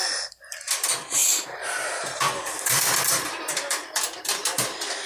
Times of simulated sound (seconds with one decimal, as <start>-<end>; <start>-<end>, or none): 1.2-4.3